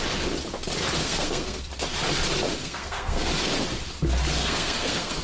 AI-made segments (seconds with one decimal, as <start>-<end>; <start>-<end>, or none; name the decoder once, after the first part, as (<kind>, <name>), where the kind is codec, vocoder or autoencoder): 1.0-1.6 (codec, SNAC); 2.6-3.3; 4.4-5.2